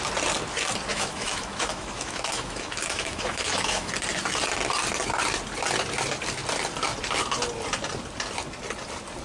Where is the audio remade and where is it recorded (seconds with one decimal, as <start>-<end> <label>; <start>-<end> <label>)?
0.0-0.9 recorded; 0.9-3.9 remade; 3.9-9.2 recorded